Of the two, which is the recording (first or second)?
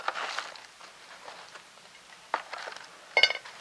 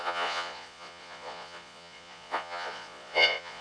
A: first